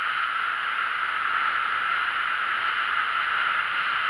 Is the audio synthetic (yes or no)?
no